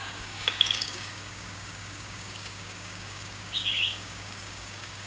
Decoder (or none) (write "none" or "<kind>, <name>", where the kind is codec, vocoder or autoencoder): codec, DAC